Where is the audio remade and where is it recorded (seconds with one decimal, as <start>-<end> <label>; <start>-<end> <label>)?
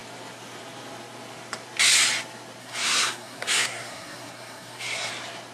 0.0-2.6 recorded; 2.6-5.1 remade; 5.1-5.5 recorded